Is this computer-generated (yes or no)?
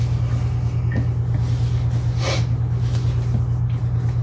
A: no